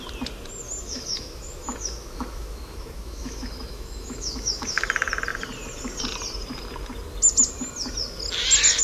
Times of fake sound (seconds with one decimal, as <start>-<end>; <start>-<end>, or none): 0.8-4.8